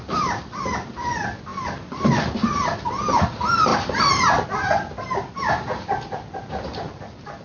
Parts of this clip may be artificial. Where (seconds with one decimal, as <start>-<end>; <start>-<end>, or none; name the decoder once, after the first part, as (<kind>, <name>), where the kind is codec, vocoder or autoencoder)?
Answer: none